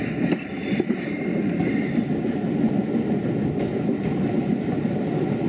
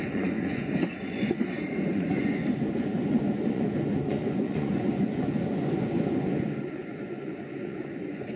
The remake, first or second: second